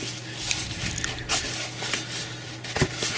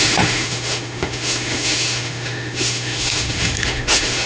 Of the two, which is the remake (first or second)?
second